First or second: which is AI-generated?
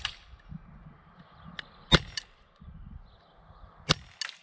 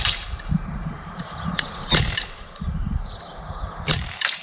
second